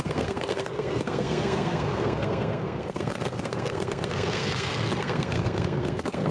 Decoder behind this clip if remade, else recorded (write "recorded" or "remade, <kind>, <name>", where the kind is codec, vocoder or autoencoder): remade, codec, SNAC